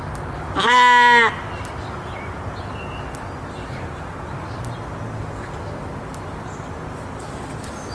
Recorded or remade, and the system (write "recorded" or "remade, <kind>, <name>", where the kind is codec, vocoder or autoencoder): recorded